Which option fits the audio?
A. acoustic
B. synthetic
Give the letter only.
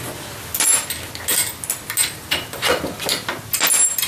A